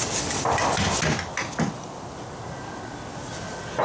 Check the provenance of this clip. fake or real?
real